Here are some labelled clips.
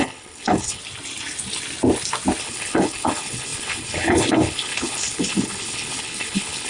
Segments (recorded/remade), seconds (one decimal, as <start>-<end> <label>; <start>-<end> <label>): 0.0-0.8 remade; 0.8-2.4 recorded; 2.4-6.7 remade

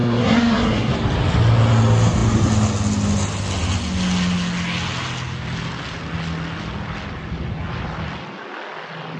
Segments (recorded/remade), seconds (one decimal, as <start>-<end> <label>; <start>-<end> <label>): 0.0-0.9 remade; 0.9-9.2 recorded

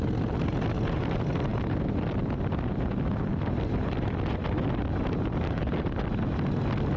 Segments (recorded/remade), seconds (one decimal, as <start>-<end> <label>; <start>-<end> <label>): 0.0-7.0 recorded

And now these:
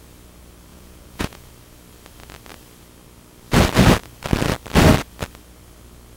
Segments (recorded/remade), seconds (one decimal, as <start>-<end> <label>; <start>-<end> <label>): 0.0-0.7 recorded; 0.7-1.5 remade; 1.5-6.2 recorded

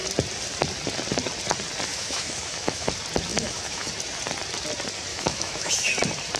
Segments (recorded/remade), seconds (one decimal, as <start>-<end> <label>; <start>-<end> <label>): 0.0-1.9 recorded; 1.9-2.9 remade; 2.9-3.3 recorded; 3.3-3.9 remade; 3.9-5.1 recorded; 5.1-5.7 remade; 5.7-6.4 recorded